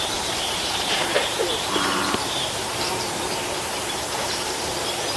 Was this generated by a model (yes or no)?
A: yes